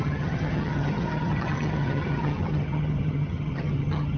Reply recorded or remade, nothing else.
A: remade